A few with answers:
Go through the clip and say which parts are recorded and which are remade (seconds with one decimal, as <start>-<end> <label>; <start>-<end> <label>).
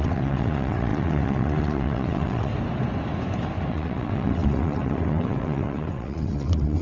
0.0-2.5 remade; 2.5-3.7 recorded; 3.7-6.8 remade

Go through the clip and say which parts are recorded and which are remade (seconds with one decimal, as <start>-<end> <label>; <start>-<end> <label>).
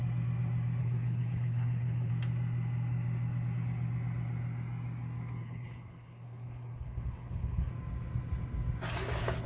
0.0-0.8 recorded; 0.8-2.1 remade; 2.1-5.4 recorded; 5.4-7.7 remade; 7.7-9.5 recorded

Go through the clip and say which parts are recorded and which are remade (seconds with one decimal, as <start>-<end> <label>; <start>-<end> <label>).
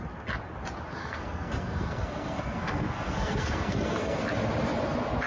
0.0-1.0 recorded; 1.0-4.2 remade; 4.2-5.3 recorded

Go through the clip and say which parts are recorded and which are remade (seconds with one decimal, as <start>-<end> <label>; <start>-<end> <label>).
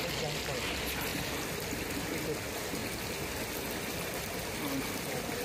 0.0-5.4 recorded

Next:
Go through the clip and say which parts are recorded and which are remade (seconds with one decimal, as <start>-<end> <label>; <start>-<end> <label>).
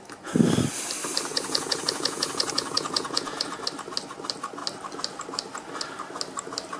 0.0-1.3 recorded; 1.3-3.6 remade; 3.6-6.8 recorded